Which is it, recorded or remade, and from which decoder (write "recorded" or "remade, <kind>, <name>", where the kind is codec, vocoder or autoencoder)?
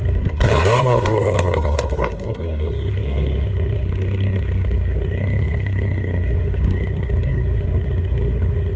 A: remade, codec, SNAC